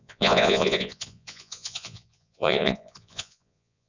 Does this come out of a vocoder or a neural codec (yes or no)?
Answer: yes